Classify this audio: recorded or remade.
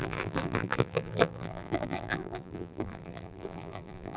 remade